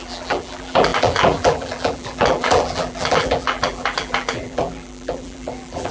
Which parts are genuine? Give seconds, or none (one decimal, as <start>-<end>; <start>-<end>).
none